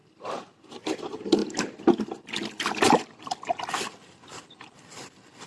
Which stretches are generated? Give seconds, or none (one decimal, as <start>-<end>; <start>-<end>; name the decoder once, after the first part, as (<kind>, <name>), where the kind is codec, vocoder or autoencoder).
none